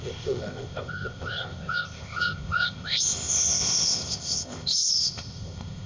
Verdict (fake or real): fake